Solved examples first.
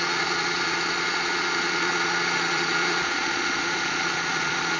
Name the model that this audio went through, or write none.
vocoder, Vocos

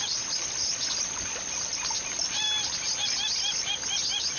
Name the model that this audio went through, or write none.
none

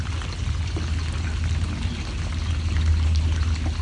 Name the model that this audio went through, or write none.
none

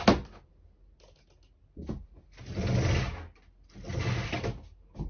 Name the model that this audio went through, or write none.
none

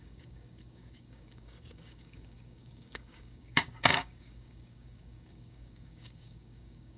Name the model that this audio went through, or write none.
codec, DAC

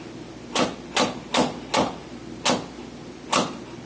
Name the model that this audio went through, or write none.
none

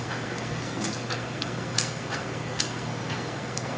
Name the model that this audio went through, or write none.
codec, SNAC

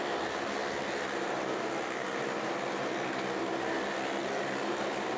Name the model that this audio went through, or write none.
none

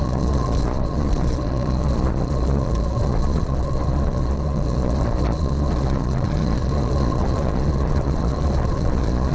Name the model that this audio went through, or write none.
vocoder, Vocos